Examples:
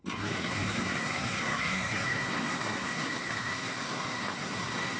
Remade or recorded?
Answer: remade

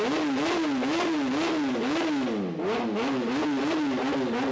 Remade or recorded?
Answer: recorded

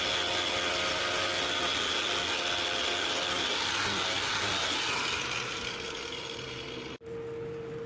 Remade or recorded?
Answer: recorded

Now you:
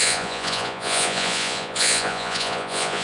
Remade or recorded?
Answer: remade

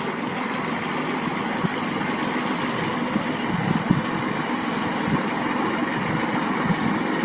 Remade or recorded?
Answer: recorded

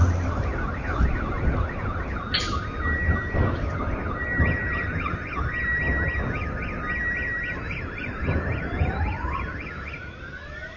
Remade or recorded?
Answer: recorded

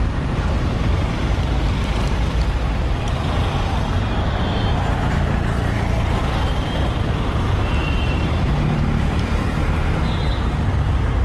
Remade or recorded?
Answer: remade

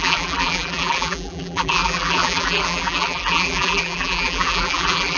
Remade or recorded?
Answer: remade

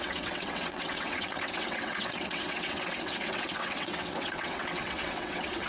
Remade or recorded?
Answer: remade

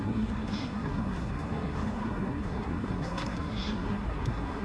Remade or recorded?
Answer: remade